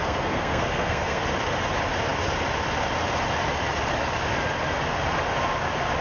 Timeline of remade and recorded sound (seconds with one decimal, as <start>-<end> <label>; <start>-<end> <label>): 0.0-1.2 remade; 1.2-6.0 recorded